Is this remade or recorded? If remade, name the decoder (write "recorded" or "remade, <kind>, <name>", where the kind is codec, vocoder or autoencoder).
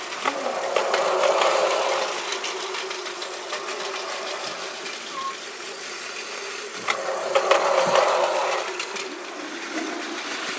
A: recorded